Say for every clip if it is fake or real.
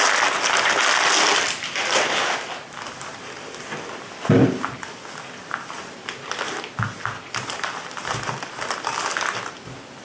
real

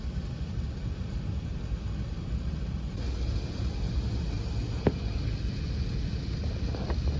real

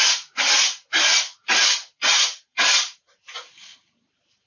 real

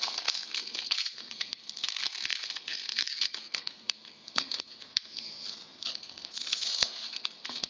fake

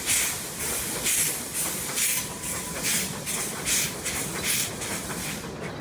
real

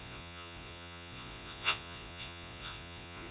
fake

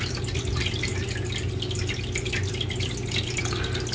real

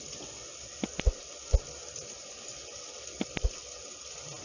real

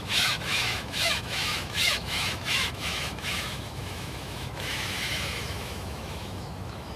fake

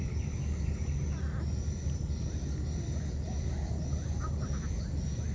real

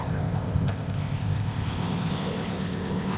fake